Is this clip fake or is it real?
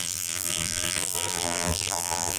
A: fake